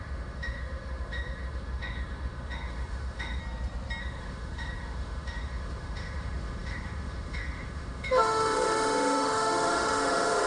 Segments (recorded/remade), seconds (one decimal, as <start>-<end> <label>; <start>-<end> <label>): 0.0-3.4 remade; 3.4-4.0 recorded; 4.0-10.5 remade